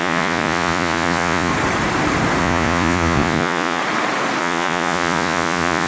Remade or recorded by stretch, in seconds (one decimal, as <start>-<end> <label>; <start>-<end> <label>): 0.0-1.5 remade; 1.5-2.4 recorded; 2.4-3.8 remade; 3.8-4.4 recorded; 4.4-5.9 remade